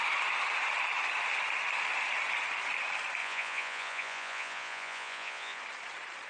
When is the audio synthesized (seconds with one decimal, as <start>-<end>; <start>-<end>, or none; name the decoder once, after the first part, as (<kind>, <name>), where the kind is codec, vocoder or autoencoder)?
3.2-5.6 (vocoder, Vocos)